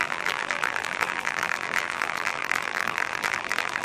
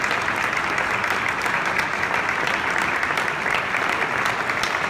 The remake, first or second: first